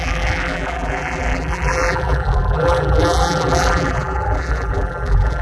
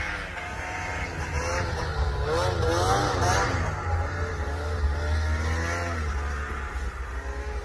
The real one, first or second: second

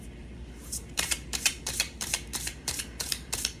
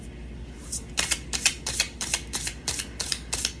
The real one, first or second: second